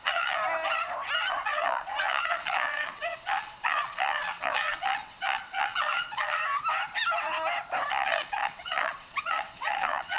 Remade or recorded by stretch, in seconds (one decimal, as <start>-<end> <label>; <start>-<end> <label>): 0.0-0.4 remade; 0.4-1.3 recorded; 1.3-6.4 remade; 6.4-7.9 recorded; 7.9-10.2 remade